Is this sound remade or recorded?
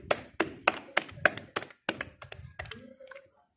recorded